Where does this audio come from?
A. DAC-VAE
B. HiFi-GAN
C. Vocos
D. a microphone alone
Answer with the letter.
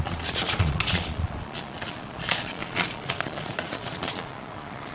C